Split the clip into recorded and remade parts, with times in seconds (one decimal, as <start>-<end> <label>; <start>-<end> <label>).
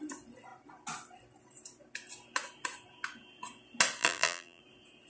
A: 0.0-4.0 recorded; 4.0-4.6 remade; 4.6-5.1 recorded